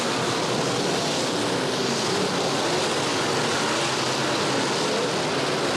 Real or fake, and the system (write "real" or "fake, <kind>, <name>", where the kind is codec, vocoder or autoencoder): real